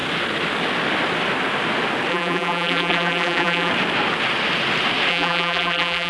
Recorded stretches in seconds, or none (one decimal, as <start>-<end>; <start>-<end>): 0.0-2.1; 3.7-5.1